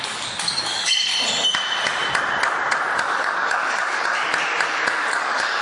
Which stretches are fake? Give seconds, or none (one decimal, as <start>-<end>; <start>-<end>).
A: 0.0-1.1; 3.0-4.2; 4.9-5.6

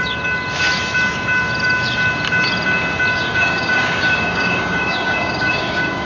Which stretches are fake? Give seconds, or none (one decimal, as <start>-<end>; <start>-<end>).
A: 3.1-6.1

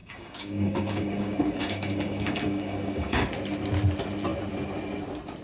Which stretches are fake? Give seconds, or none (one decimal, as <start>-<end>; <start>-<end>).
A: 0.0-3.2

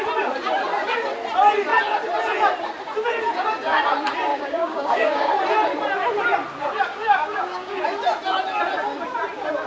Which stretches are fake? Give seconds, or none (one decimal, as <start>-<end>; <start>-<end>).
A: 4.3-5.3; 6.9-7.8

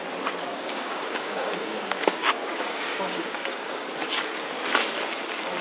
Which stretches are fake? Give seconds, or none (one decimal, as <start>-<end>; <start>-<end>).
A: 0.5-3.9

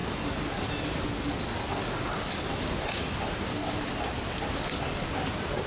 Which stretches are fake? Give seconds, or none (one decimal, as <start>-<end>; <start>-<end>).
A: none

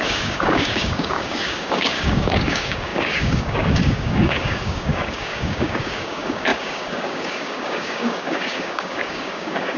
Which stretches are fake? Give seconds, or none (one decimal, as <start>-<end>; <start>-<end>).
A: 0.0-9.8